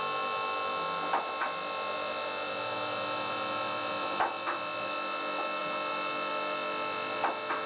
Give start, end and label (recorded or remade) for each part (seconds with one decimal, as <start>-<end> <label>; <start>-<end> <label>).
0.0-7.7 recorded